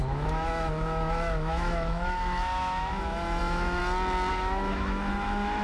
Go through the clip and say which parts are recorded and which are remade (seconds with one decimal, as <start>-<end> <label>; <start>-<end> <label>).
0.0-3.8 remade; 3.8-4.3 recorded; 4.3-5.6 remade

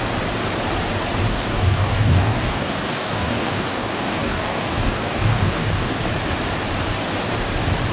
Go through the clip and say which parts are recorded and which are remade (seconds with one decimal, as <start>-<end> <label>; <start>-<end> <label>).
0.0-1.3 recorded; 1.3-6.0 remade; 6.0-7.9 recorded

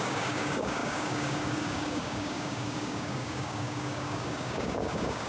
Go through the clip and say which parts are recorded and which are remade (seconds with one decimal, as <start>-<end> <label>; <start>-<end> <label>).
0.0-5.3 remade

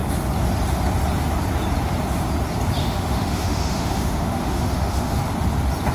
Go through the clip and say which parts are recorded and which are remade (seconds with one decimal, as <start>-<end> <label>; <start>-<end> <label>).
0.0-2.8 recorded; 2.8-5.2 remade; 5.2-5.9 recorded

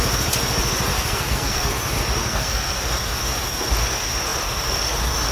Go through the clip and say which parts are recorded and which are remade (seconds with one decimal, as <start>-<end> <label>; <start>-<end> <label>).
0.0-0.9 recorded; 0.9-1.7 remade; 1.7-2.2 recorded; 2.2-2.8 remade; 2.8-5.3 recorded

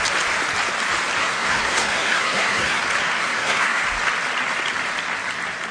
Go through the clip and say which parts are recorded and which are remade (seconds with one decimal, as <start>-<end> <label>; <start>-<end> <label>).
0.0-1.2 recorded; 1.2-2.8 remade; 2.8-3.2 recorded; 3.2-3.8 remade; 3.8-5.7 recorded

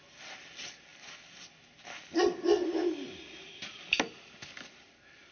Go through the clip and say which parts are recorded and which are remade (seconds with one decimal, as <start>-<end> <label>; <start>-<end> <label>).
0.0-5.3 recorded

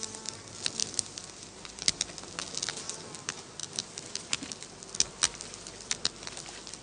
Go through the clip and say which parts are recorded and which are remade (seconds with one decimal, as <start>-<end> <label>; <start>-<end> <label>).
0.0-0.8 recorded; 0.8-1.9 remade; 1.9-3.6 recorded; 3.6-6.1 remade; 6.1-6.8 recorded